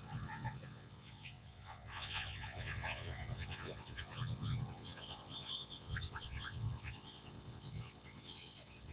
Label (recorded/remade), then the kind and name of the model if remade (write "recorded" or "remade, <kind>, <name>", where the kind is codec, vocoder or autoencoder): remade, vocoder, WaveNeXt